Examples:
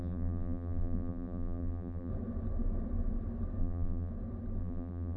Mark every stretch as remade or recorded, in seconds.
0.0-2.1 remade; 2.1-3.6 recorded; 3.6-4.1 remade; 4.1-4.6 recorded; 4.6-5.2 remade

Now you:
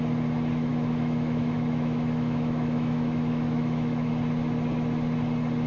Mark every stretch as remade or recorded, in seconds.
0.0-0.7 recorded; 0.7-4.1 remade; 4.1-5.7 recorded

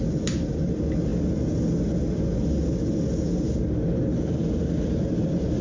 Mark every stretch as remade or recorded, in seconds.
0.0-1.1 remade; 1.1-4.5 recorded; 4.5-5.6 remade

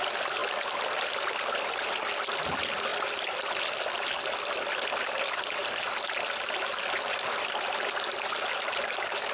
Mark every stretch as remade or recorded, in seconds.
0.0-9.3 recorded